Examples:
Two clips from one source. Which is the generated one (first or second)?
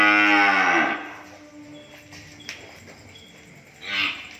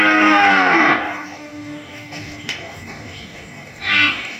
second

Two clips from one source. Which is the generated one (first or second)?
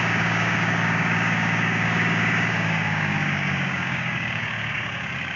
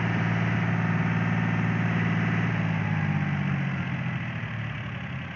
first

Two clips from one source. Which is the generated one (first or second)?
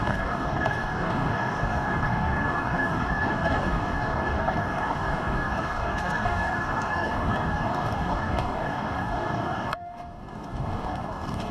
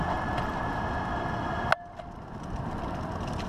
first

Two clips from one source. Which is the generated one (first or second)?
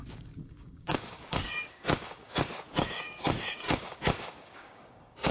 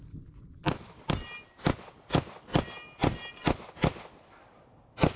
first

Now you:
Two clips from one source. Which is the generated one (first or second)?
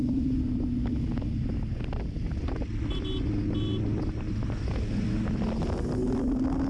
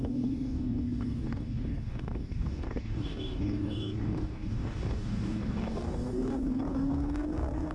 second